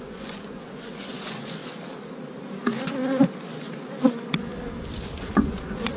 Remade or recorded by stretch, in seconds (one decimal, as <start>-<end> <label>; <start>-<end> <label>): 0.0-1.6 remade; 1.6-5.2 recorded; 5.2-6.0 remade